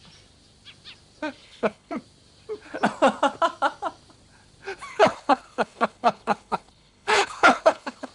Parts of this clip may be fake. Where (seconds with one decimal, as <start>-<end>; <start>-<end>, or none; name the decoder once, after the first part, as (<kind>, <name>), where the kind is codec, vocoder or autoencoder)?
1.4-2.0 (codec, HILCodec); 4.9-8.1